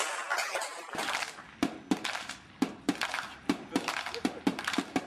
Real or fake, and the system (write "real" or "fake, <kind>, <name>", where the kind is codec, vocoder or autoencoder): real